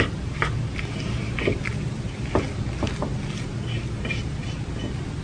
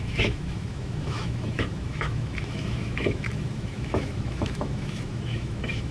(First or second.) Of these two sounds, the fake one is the second